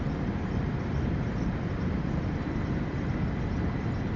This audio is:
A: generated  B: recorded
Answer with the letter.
B